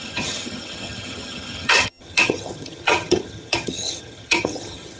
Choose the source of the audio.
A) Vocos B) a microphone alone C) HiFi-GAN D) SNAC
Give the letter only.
C